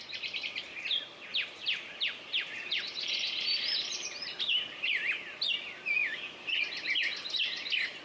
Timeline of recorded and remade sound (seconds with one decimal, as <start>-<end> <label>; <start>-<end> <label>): 0.0-1.3 recorded; 1.3-5.1 remade; 5.1-6.0 recorded; 6.0-6.6 remade; 6.6-8.0 recorded